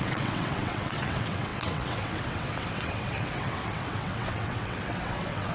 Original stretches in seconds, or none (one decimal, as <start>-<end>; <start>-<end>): none